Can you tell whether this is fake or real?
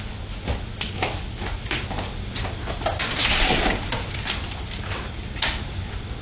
real